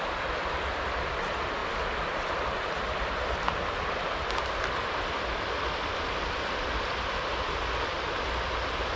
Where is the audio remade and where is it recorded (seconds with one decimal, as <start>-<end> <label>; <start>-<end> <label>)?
0.0-9.0 recorded